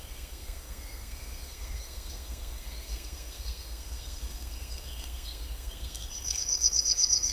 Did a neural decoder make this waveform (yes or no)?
yes